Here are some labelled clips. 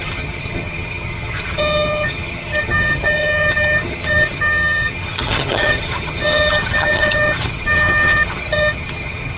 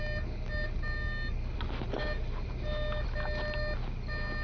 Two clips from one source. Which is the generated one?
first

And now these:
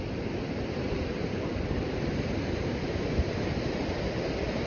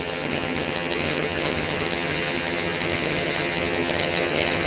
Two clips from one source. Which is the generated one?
second